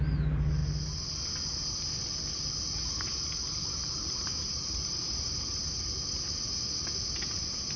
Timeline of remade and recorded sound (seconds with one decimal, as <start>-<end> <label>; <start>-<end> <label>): 0.0-3.8 recorded; 3.8-5.9 remade; 5.9-7.8 recorded